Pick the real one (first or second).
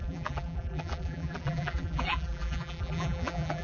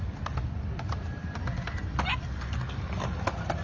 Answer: second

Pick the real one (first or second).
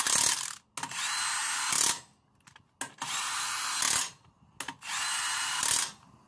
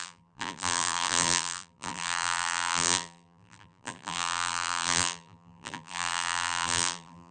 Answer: first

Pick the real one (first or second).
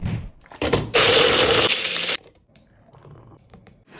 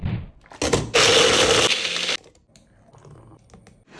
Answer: second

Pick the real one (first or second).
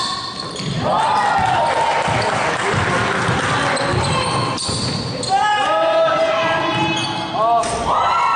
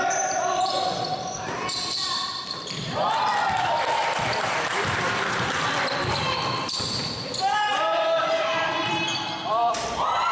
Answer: first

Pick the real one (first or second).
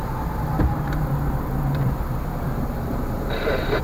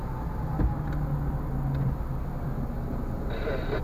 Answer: second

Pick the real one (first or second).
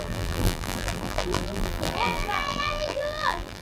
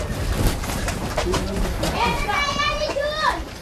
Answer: second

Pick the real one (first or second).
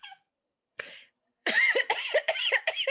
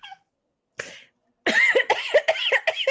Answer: second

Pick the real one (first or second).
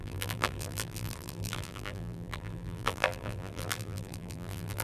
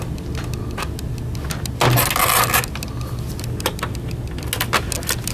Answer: second